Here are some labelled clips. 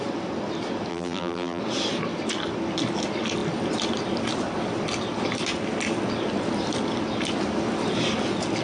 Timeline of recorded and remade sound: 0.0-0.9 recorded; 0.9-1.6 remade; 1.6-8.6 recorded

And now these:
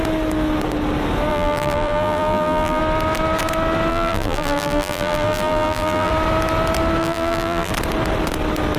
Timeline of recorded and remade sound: 0.0-1.3 recorded; 1.3-2.8 remade; 2.8-3.9 recorded; 3.9-6.1 remade; 6.1-7.0 recorded; 7.0-7.7 remade; 7.7-8.8 recorded

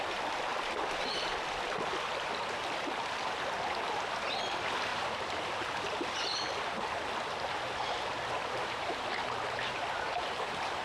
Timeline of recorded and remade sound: 0.0-4.9 recorded; 4.9-5.7 remade; 5.7-8.5 recorded; 8.5-10.8 remade

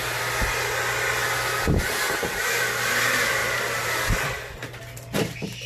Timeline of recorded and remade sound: 0.0-5.7 recorded

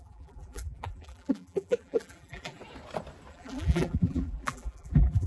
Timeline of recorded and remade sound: 0.0-2.6 remade; 2.6-3.3 recorded; 3.3-5.3 remade

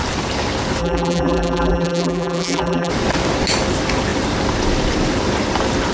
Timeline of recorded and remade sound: 0.0-0.8 recorded; 0.8-2.9 remade; 2.9-5.9 recorded